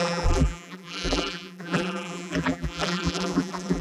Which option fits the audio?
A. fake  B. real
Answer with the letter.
A